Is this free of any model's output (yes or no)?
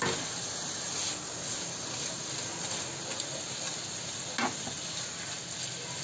yes